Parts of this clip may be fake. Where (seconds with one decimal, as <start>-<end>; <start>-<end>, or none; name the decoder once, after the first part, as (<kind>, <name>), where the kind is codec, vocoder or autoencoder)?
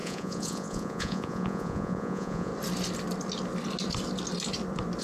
0.0-2.5 (vocoder, Vocos)